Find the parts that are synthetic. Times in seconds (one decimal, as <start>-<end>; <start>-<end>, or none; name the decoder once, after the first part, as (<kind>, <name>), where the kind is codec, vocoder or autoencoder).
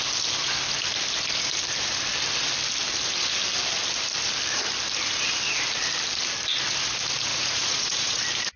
7.3-8.2 (vocoder, Vocos)